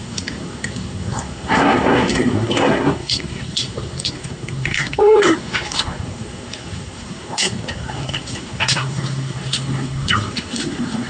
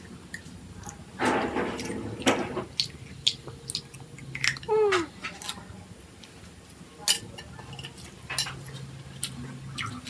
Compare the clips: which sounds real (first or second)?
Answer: second